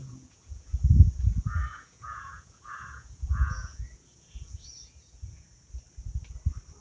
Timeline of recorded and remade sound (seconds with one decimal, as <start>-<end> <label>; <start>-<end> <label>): 0.0-0.7 remade; 0.7-1.7 recorded; 1.7-5.7 remade; 5.7-6.8 recorded